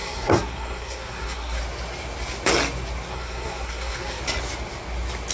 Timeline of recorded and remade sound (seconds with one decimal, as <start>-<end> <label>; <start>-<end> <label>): 0.0-1.6 remade; 1.6-3.1 recorded; 3.1-4.2 remade; 4.2-5.3 recorded